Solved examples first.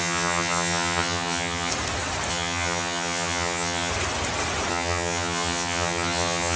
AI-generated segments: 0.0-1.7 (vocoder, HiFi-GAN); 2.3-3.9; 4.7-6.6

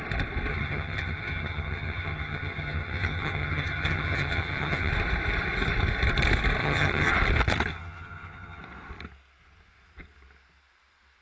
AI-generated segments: 0.5-4.9 (vocoder, HiFi-GAN); 6.6-7.1; 7.7-8.6

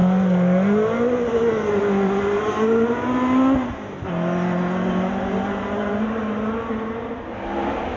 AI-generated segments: none